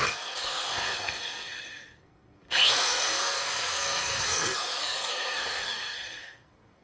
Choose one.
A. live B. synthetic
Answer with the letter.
B